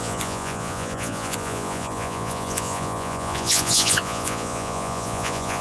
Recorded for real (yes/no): no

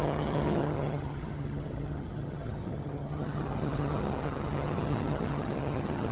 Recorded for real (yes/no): no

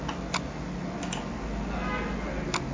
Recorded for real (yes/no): yes